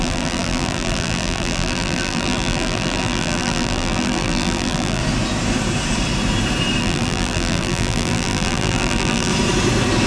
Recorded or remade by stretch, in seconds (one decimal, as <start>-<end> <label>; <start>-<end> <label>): 0.0-5.0 remade; 5.0-6.8 recorded; 6.8-9.3 remade; 9.3-10.1 recorded

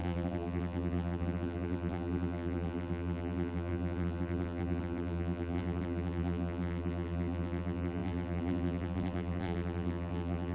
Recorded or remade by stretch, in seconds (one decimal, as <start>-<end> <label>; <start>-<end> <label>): 0.0-10.5 remade

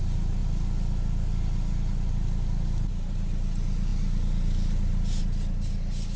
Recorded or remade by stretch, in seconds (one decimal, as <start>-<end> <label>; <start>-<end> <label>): 0.0-0.4 remade; 0.4-2.9 recorded; 2.9-6.2 remade